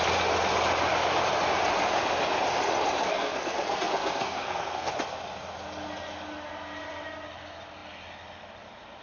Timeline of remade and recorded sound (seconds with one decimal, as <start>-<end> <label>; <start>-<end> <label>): 0.0-3.0 recorded; 3.0-4.9 remade; 4.9-9.0 recorded